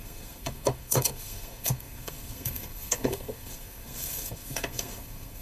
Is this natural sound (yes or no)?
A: no